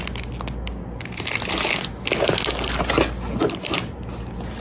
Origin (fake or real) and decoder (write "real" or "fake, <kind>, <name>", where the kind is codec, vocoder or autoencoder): real